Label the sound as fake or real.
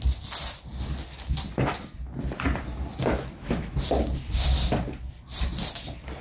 real